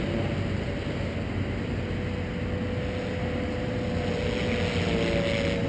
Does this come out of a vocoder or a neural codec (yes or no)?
no